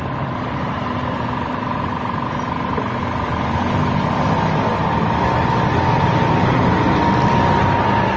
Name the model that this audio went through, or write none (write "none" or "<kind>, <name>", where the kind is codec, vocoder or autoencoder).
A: none